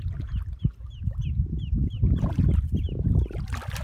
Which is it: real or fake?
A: real